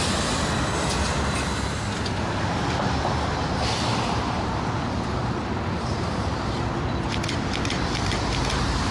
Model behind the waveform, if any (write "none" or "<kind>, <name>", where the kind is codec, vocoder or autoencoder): none